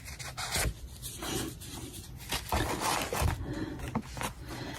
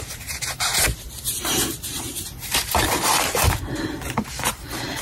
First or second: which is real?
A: first